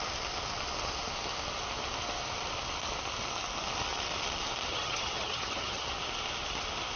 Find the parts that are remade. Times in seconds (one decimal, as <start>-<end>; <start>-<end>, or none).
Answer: 4.7-5.9